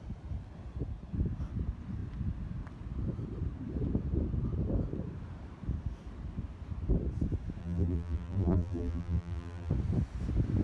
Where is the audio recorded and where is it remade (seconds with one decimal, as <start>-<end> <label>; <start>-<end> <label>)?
0.0-7.6 recorded; 7.6-9.7 remade; 9.7-10.6 recorded